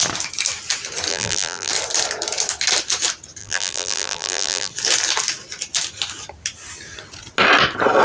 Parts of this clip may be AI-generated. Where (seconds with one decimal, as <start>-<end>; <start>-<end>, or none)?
1.1-1.7; 3.4-4.7